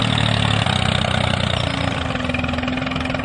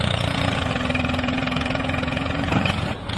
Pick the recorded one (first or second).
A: first